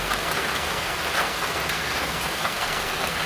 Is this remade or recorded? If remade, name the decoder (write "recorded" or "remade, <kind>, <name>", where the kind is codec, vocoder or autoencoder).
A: remade, codec, SNAC